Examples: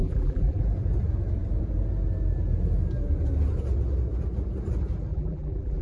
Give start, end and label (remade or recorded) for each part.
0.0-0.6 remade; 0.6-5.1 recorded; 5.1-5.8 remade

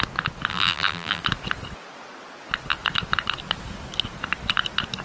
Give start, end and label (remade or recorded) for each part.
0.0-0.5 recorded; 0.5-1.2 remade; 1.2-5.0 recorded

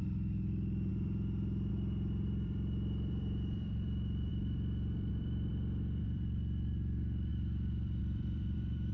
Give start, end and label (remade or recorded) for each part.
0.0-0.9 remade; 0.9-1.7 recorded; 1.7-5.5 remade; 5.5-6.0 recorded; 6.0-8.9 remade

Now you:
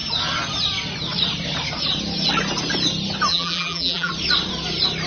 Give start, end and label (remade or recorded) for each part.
0.0-3.3 recorded; 3.3-4.1 remade; 4.1-5.1 recorded

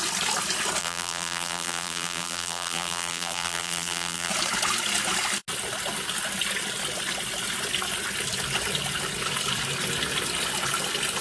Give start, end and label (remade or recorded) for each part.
0.0-0.8 recorded; 0.8-4.3 remade; 4.3-11.2 recorded

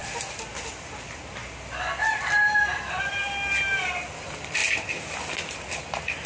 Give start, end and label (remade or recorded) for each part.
0.0-4.6 remade; 4.6-5.7 recorded; 5.7-6.3 remade

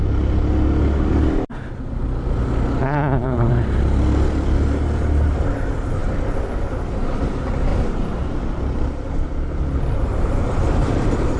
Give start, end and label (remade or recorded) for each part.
0.0-2.8 recorded; 2.8-3.5 remade; 3.5-7.7 recorded; 7.7-8.6 remade; 8.6-10.6 recorded; 10.6-11.4 remade

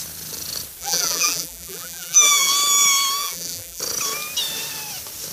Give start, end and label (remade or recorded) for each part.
0.0-0.8 recorded; 0.8-2.5 remade; 2.5-3.2 recorded; 3.2-3.8 remade; 3.8-5.3 recorded